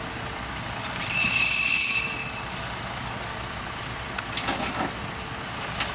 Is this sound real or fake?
fake